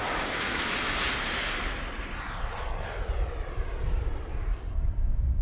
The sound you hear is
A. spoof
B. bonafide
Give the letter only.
B